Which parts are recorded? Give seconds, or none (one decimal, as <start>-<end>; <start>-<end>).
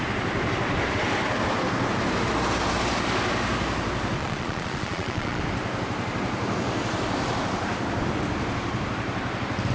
0.0-4.2; 5.4-9.7